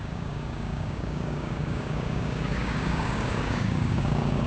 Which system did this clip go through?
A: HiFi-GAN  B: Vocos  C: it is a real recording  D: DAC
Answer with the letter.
D